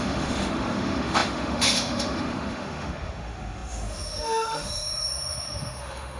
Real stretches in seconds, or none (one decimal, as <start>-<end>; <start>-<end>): none